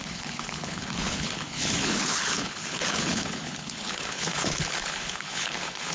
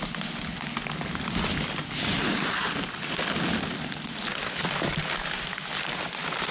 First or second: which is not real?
first